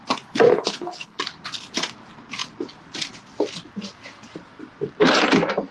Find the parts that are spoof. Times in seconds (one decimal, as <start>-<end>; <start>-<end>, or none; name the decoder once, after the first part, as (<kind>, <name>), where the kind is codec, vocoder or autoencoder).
0.5-1.2 (codec, HILCodec)